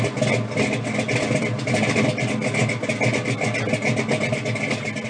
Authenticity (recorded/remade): recorded